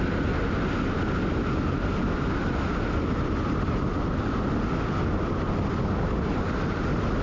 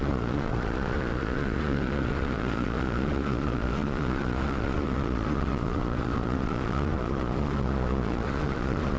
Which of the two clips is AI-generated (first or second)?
second